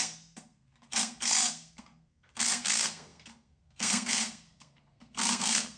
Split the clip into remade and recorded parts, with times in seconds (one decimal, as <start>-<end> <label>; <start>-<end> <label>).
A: 0.0-5.8 remade